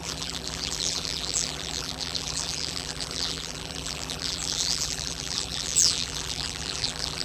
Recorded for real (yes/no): no